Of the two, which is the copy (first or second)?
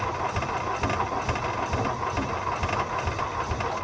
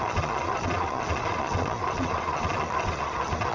second